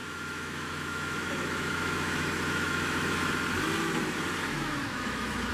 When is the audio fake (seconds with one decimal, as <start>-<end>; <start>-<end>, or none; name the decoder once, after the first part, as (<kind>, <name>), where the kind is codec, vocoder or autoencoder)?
0.0-3.3 (autoencoder, DAC-VAE); 4.5-5.5

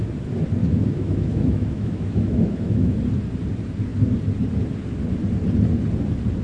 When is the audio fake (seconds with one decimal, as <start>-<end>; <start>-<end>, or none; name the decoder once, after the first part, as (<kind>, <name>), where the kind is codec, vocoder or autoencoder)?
0.6-3.0 (autoencoder, DAC-VAE)

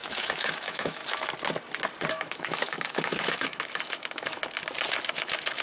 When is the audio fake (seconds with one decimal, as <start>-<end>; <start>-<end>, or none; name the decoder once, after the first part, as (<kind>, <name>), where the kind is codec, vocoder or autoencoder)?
0.0-1.0 (autoencoder, DAC-VAE); 2.1-4.4; 5.1-5.6

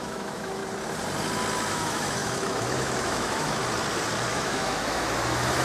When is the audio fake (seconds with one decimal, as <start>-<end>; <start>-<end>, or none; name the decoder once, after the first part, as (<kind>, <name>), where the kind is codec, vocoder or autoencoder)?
0.0-0.6 (autoencoder, DAC-VAE); 1.7-3.6; 4.3-5.6

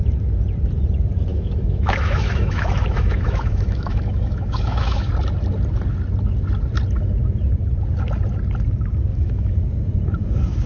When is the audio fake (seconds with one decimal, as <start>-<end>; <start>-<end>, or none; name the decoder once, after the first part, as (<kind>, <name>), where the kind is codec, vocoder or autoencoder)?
1.3-5.1 (autoencoder, DAC-VAE); 9.1-9.6